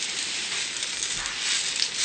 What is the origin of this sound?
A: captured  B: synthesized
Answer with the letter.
A